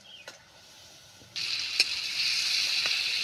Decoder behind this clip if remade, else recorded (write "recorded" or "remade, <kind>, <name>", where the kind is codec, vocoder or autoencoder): recorded